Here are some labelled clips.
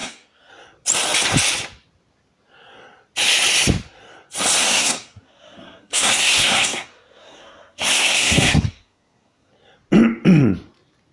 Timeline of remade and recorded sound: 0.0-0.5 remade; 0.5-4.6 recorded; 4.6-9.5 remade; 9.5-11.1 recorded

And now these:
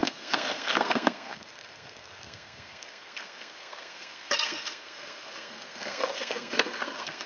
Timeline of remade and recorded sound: 0.0-7.3 remade

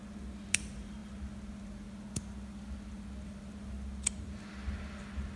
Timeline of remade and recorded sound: 0.0-5.4 recorded

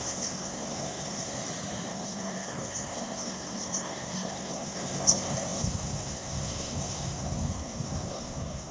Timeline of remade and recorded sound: 0.0-1.4 remade; 1.4-1.9 recorded; 1.9-8.7 remade

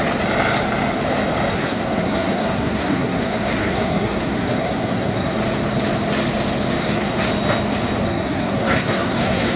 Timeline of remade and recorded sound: 0.0-1.5 recorded; 1.5-5.4 remade; 5.4-6.8 recorded; 6.8-7.3 remade; 7.3-8.0 recorded; 8.0-9.6 remade

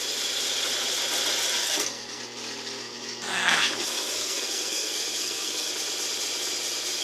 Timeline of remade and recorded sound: 0.0-1.6 recorded; 1.6-2.2 remade; 2.2-2.8 recorded; 2.8-5.7 remade; 5.7-7.0 recorded

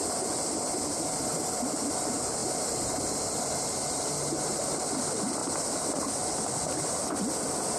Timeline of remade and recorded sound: 0.0-7.8 recorded

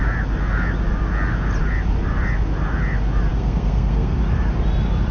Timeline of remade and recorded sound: 0.0-3.3 recorded; 3.3-4.2 remade; 4.2-5.1 recorded